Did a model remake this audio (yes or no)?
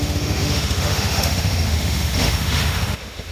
yes